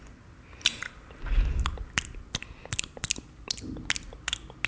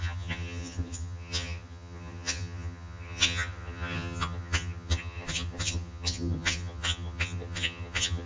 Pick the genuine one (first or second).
first